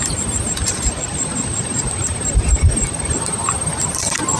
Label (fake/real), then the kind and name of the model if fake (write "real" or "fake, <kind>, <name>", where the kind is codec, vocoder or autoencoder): fake, vocoder, BigVGAN v2